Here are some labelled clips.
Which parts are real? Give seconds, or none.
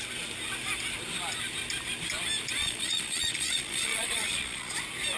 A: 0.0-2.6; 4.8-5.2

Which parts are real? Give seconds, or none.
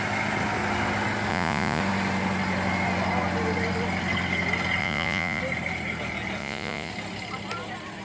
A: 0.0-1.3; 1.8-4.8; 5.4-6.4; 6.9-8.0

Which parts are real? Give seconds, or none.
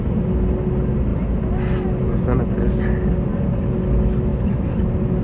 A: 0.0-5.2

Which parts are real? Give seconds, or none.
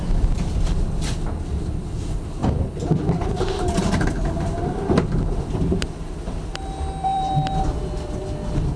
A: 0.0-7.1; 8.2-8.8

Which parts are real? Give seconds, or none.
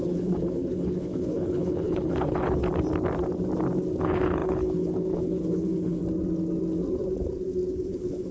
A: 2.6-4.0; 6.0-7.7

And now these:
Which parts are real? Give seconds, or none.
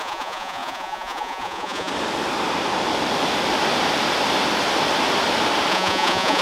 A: 1.9-5.7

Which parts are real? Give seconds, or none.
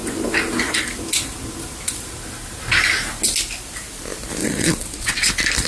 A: 0.0-4.4; 5.3-5.7